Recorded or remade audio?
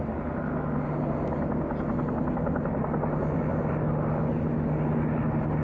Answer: recorded